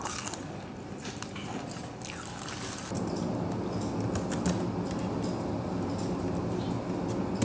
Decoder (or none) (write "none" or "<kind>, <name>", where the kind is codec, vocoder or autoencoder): none